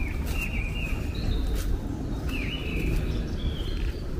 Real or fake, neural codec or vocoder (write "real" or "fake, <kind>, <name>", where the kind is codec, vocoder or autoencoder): real